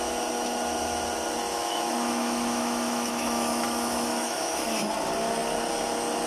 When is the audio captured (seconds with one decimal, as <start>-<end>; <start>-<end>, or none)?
0.0-1.5; 4.9-6.3